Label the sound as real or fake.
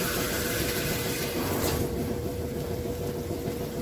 fake